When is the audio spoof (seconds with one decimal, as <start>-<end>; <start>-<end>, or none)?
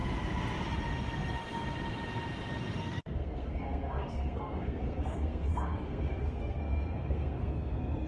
2.8-8.1